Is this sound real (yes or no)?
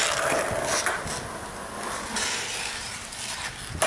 yes